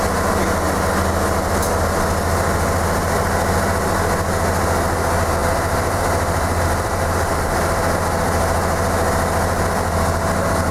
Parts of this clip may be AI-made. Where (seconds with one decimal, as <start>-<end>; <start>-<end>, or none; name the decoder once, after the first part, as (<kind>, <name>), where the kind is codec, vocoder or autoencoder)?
5.4-7.6 (vocoder, BigVGAN v2)